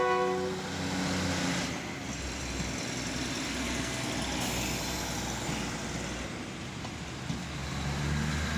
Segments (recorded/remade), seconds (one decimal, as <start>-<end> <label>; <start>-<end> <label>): 0.0-3.6 recorded; 3.6-4.1 remade; 4.1-8.6 recorded